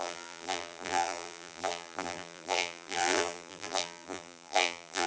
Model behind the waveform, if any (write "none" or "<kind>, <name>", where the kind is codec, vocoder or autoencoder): vocoder, BigVGAN v2